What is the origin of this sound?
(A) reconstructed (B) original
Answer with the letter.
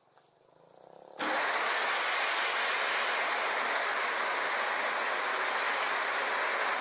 B